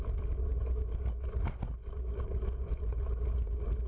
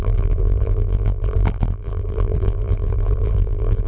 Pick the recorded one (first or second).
first